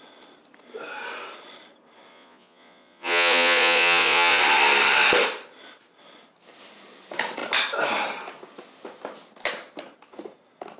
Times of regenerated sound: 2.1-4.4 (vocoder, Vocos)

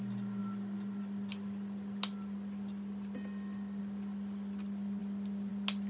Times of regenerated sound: none

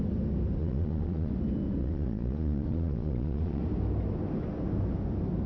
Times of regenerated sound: 0.6-1.3 (vocoder, Vocos); 1.8-3.6

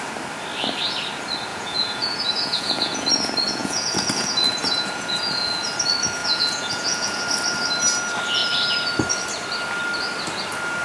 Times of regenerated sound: 1.5-3.1 (vocoder, Vocos); 3.6-5.7; 6.2-7.2